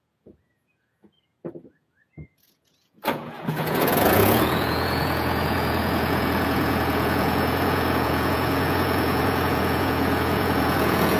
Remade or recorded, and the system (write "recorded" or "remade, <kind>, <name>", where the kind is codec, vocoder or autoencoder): remade, vocoder, Vocos